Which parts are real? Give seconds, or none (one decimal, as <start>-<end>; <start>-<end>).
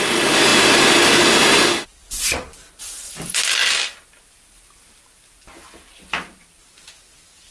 0.0-7.5